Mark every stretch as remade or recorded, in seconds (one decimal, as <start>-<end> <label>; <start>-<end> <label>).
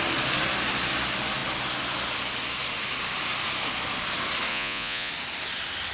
0.0-4.5 recorded; 4.5-5.1 remade; 5.1-5.9 recorded